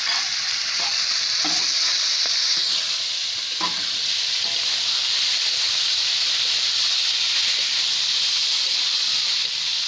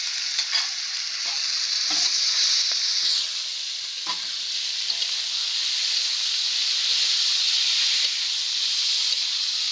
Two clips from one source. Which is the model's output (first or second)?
first